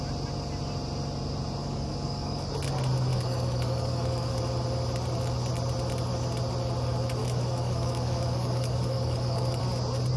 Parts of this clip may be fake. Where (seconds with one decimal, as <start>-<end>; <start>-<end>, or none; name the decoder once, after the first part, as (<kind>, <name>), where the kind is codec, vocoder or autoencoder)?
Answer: 1.6-2.5 (codec, DAC); 3.1-4.4; 7.2-9.6